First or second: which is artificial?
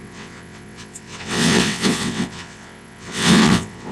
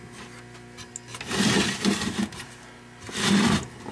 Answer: first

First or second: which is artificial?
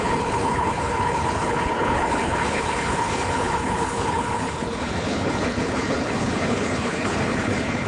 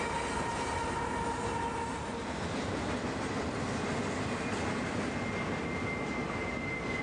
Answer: first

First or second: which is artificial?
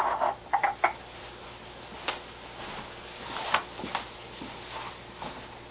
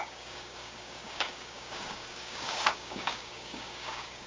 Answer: second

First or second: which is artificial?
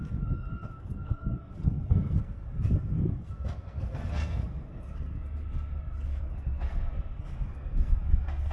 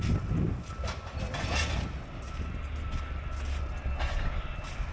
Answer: first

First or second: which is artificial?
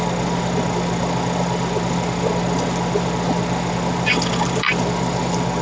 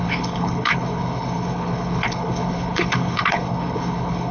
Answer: second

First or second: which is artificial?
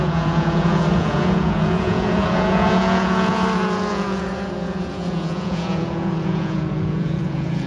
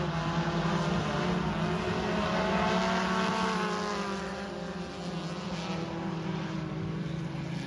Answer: first